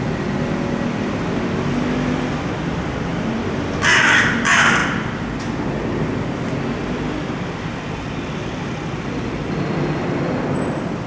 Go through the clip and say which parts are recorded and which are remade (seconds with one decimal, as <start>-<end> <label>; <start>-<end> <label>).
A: 0.0-11.1 recorded